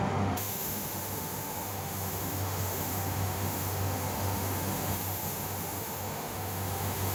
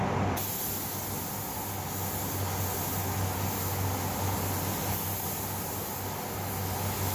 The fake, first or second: first